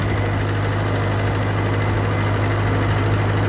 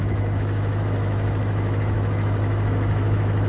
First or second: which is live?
first